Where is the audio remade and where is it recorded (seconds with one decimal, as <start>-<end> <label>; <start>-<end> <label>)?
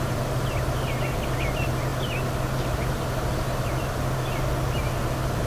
0.0-5.5 recorded